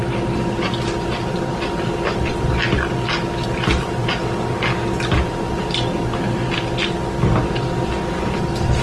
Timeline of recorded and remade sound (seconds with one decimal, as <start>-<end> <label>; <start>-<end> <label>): 0.0-8.8 recorded